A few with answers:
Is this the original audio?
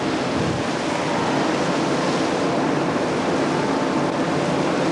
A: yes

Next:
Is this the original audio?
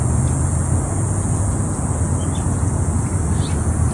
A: yes